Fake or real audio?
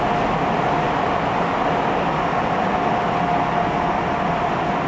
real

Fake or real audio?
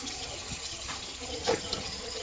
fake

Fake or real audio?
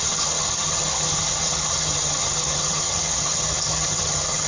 fake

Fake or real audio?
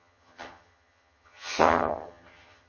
fake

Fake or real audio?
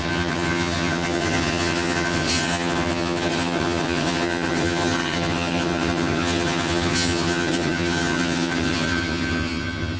fake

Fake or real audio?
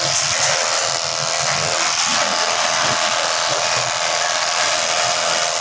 real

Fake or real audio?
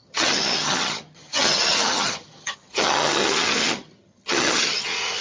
fake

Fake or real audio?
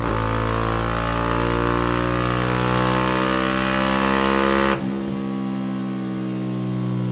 real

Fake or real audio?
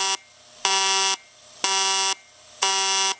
real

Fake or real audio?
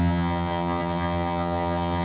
fake